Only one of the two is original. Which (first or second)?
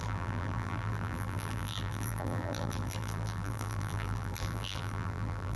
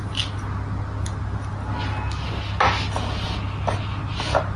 second